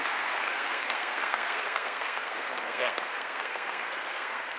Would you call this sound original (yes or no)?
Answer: no